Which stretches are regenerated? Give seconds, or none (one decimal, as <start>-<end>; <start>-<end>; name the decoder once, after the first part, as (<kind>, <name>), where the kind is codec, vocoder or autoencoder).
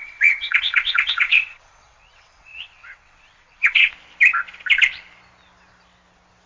0.0-3.9 (vocoder, WaveNeXt)